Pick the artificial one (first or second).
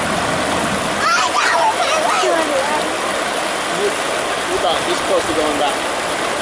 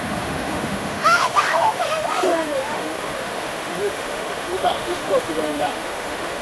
second